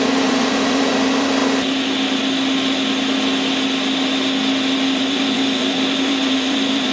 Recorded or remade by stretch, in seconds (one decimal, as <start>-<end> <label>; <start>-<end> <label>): 0.0-1.4 remade; 1.4-5.0 recorded; 5.0-6.9 remade

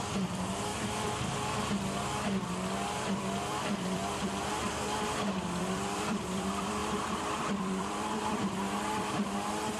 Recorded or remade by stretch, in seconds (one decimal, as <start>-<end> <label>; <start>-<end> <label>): 0.0-0.7 remade; 0.7-3.1 recorded; 3.1-4.0 remade; 4.0-5.6 recorded; 5.6-6.8 remade; 6.8-7.4 recorded; 7.4-9.8 remade

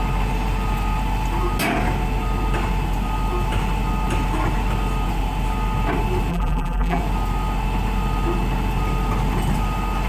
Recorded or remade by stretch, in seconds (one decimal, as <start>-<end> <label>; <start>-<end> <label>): 0.0-6.3 recorded; 6.3-7.0 remade; 7.0-10.1 recorded

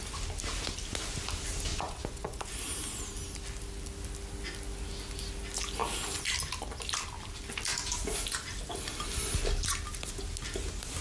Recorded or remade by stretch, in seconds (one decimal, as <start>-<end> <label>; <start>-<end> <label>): 0.0-1.7 recorded; 1.7-2.5 remade; 2.5-11.0 recorded

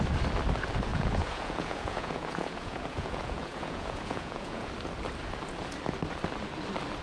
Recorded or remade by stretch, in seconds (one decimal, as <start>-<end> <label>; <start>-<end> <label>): 0.0-0.9 recorded; 0.9-4.7 remade; 4.7-7.0 recorded